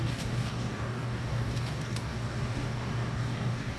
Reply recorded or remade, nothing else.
remade